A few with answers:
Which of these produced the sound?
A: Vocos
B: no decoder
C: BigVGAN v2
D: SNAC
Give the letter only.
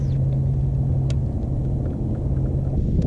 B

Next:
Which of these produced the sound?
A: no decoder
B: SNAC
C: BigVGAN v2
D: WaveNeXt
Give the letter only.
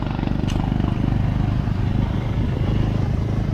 C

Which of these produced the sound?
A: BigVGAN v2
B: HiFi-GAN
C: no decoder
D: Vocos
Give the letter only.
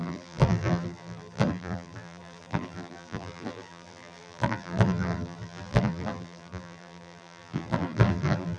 A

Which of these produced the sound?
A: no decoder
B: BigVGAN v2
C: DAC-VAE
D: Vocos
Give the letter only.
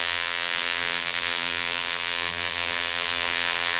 B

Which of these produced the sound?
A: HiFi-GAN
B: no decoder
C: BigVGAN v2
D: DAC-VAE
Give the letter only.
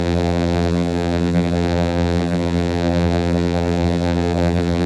C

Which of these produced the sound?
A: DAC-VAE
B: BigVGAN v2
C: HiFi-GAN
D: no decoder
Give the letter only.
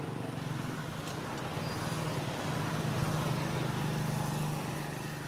D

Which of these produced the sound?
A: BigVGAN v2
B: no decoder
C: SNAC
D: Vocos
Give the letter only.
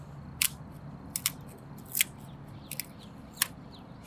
B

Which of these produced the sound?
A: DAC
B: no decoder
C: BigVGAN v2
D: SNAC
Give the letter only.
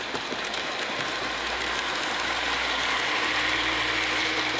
C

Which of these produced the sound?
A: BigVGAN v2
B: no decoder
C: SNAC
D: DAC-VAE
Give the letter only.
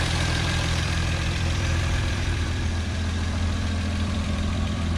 A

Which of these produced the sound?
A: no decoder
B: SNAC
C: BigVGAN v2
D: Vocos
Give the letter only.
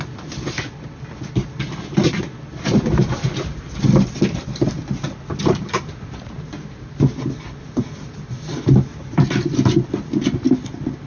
A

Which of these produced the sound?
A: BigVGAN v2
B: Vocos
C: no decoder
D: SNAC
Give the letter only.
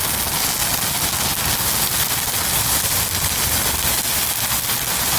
C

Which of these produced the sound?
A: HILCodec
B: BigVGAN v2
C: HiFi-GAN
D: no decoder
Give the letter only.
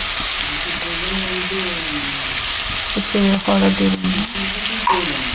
D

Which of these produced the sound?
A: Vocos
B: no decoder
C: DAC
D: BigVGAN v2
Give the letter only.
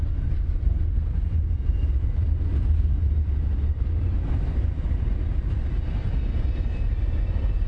B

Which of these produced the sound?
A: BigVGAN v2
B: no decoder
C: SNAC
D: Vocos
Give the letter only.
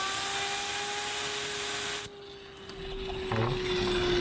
B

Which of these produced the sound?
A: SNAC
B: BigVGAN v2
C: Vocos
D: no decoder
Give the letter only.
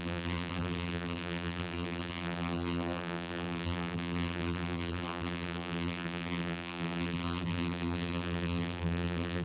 B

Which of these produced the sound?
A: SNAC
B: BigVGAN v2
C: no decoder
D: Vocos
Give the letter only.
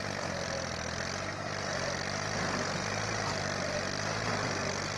B